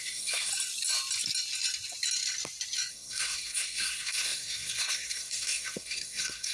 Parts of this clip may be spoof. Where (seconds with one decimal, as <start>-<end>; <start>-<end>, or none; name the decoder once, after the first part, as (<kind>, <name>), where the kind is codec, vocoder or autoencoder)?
0.0-0.5 (codec, SNAC); 2.9-6.5